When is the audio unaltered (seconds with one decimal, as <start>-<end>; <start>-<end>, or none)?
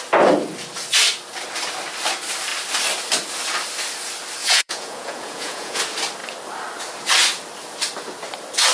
0.0-4.4; 5.8-8.7